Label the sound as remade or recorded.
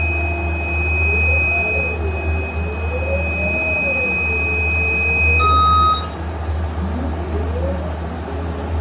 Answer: recorded